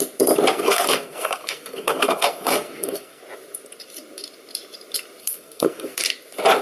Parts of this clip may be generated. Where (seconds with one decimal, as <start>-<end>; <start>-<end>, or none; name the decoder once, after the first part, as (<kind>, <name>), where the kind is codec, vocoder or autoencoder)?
0.5-3.2 (codec, SNAC); 5.2-6.0